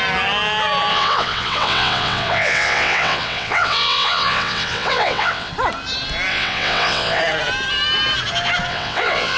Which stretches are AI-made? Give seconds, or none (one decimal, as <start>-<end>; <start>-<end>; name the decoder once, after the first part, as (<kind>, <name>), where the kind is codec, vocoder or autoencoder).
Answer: 0.9-5.5 (vocoder, WaveNeXt); 6.3-7.2; 8.7-9.4